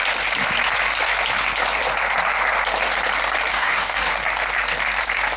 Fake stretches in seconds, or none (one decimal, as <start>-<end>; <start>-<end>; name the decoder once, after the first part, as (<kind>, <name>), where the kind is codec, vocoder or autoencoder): 3.5-4.1 (codec, DAC)